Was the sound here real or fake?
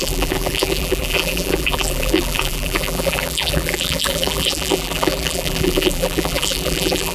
fake